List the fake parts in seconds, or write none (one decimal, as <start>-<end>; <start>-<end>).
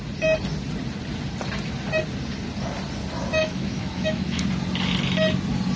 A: 3.4-4.4